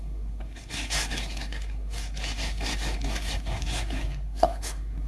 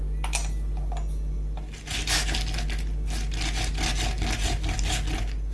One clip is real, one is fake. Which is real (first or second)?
second